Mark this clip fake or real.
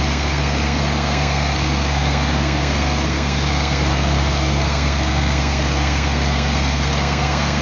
fake